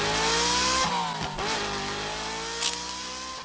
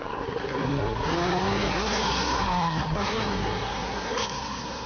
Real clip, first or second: first